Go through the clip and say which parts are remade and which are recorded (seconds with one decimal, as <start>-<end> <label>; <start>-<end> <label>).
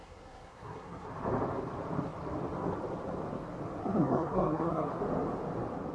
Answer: 0.0-1.1 remade; 1.1-3.8 recorded; 3.8-5.0 remade; 5.0-5.9 recorded